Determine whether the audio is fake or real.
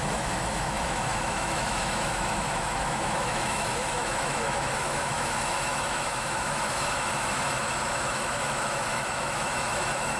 fake